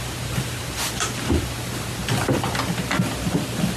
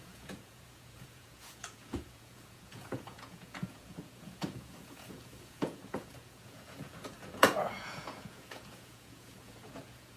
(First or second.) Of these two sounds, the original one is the first